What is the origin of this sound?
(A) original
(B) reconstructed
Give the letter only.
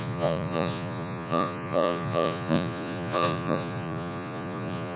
B